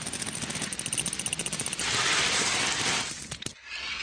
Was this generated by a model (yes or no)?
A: no